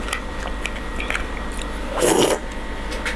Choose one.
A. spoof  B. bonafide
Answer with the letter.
B